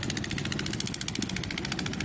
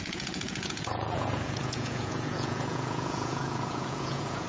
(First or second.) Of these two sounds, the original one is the first